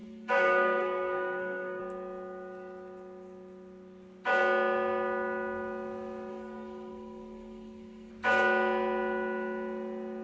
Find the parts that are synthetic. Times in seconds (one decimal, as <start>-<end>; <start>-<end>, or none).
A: 0.0-1.8; 6.3-8.1